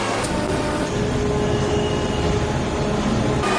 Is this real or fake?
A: real